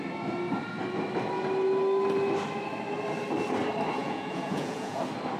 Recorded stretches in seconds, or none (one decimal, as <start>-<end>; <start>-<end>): 0.0-4.0; 5.0-5.4